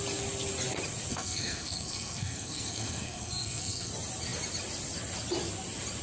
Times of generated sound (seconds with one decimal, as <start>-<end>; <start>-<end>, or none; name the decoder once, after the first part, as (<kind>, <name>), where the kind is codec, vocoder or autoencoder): 1.1-3.9 (codec, SNAC)